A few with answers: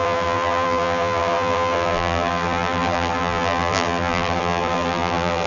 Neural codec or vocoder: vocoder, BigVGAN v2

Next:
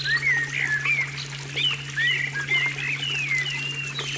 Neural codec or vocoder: none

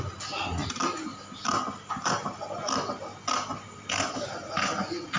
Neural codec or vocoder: none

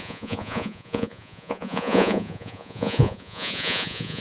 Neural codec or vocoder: vocoder, Vocos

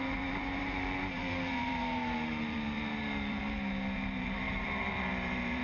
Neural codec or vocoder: vocoder, BigVGAN v2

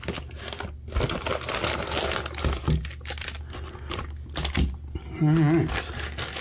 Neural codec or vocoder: none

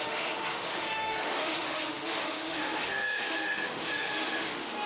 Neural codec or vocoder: autoencoder, DAC-VAE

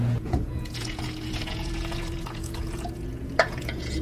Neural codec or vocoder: vocoder, Vocos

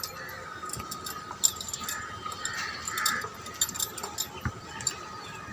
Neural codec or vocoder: none